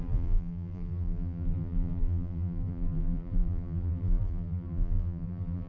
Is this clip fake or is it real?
fake